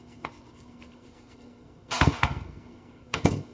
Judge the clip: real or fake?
fake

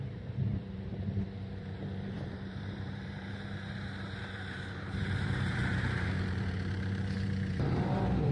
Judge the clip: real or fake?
fake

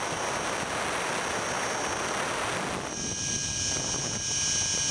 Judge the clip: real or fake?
real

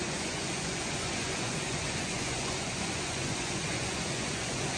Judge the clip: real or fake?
fake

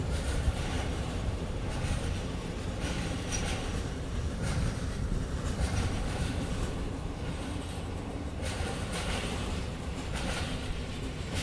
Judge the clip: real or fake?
fake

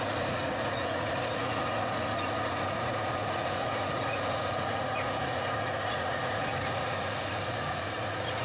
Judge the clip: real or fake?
fake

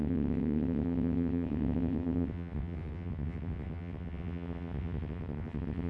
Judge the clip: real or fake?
fake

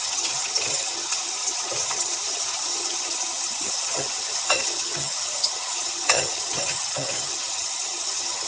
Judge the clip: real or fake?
fake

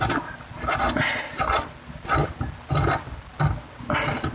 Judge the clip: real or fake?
real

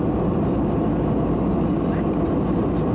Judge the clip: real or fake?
real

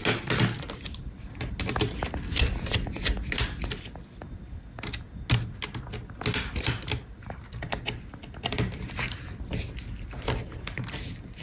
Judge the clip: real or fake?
real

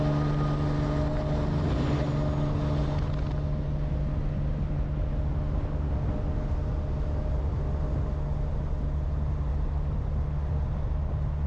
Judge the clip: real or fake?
real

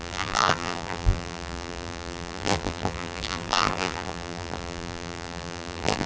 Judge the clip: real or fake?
fake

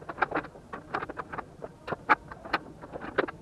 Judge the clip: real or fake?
real